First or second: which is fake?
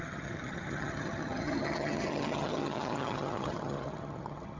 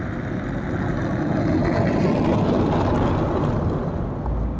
first